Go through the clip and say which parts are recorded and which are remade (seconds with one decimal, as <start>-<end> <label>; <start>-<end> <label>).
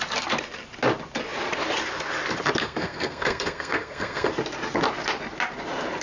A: 0.0-2.6 recorded; 2.6-4.3 remade; 4.3-6.0 recorded